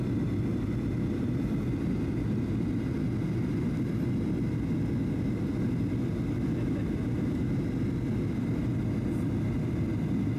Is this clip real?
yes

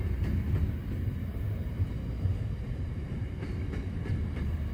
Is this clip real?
yes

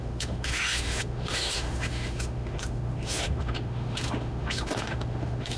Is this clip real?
no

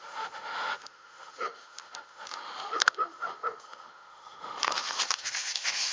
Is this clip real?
no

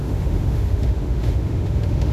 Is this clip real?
no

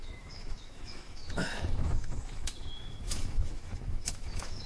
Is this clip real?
no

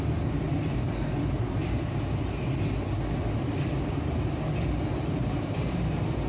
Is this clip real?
yes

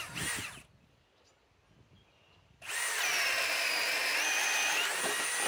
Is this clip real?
yes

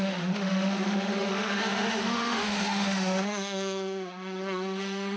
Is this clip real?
no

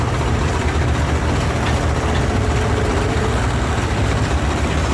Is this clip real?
yes